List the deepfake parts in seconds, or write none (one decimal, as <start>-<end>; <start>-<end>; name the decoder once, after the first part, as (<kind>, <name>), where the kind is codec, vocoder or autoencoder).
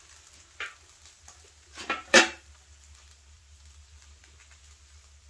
2.0-4.2 (vocoder, BigVGAN v2)